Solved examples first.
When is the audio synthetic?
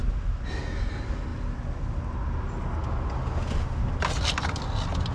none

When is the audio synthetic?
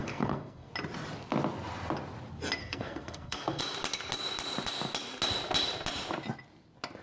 0.0-0.7 (codec, SNAC); 2.6-3.6